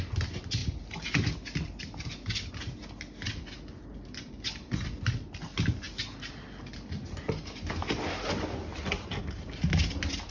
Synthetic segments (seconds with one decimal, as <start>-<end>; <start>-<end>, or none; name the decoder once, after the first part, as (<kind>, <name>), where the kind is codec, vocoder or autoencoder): none